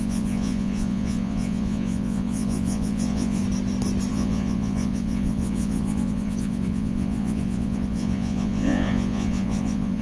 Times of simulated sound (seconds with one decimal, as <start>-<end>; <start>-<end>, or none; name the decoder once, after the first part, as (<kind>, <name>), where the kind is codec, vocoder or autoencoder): 0.0-3.4 (vocoder, Vocos); 4.1-10.0